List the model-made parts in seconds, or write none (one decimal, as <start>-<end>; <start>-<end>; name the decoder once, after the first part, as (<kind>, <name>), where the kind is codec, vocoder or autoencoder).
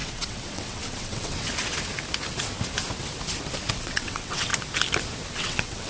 0.0-1.5 (vocoder, WaveNeXt); 3.7-4.5; 5.3-5.9